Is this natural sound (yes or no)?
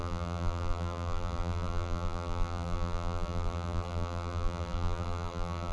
no